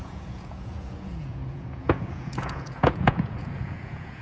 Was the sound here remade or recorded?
remade